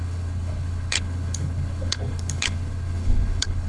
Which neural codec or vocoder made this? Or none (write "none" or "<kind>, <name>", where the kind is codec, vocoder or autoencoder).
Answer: codec, HILCodec